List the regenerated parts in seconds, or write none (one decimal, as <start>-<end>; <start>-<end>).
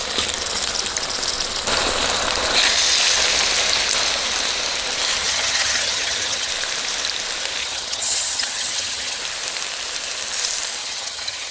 5.2-6.5; 7.6-9.2; 10.8-11.5